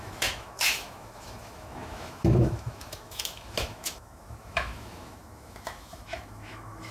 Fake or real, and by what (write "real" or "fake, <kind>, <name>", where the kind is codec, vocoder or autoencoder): fake, autoencoder, DAC-VAE